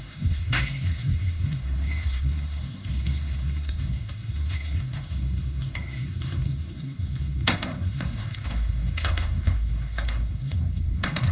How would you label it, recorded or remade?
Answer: remade